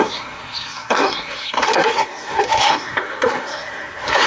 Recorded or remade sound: remade